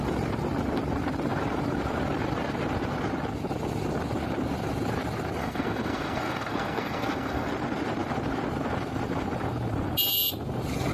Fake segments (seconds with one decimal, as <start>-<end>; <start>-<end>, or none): 5.4-7.5